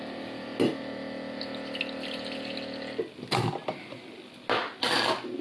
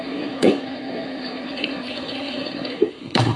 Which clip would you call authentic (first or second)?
first